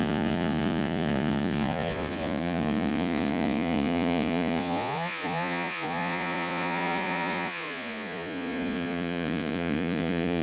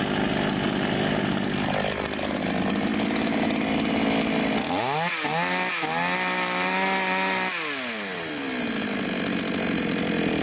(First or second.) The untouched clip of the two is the second